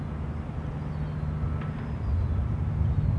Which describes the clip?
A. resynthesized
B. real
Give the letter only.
B